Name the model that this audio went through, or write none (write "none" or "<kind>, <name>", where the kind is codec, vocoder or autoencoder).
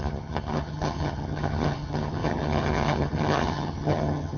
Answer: vocoder, HiFi-GAN